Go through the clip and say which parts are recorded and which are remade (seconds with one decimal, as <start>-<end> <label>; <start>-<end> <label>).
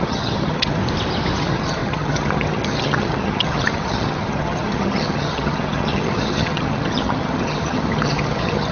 0.0-0.8 remade; 0.8-1.4 recorded; 1.4-8.7 remade